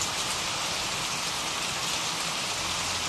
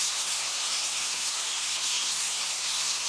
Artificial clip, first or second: second